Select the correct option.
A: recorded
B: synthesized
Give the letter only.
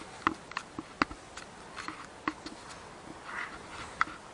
A